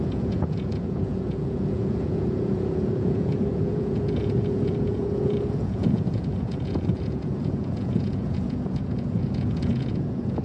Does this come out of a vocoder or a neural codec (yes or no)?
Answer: yes